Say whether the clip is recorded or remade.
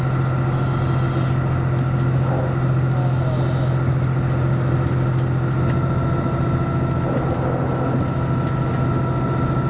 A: recorded